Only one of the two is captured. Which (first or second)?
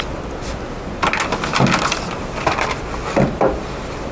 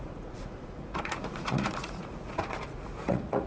first